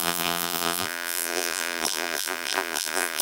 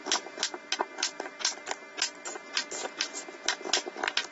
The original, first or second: second